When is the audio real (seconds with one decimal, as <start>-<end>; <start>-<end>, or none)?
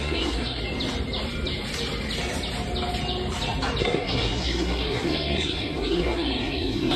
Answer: 0.6-3.8